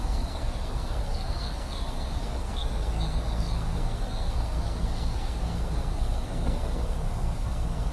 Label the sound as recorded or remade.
remade